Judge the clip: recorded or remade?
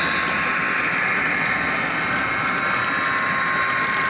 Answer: recorded